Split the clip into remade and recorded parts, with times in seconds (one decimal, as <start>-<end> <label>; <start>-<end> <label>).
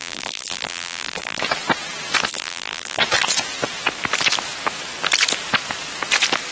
0.0-1.4 remade; 1.4-2.3 recorded; 2.3-3.0 remade; 3.0-6.5 recorded